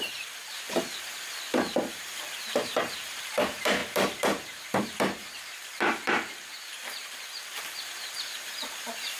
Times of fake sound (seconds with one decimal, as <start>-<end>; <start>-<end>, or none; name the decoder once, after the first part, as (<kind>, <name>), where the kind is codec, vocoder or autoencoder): 0.0-9.2 (vocoder, BigVGAN v2)